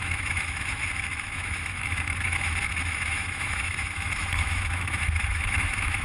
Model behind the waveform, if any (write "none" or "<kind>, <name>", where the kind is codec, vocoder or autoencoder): autoencoder, DAC-VAE